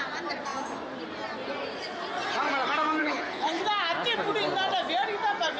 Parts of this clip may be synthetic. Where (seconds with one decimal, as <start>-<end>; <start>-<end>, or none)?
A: 3.0-3.6